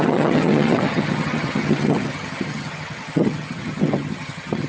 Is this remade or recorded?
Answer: remade